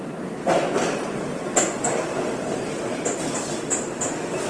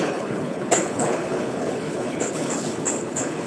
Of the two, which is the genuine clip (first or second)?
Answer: first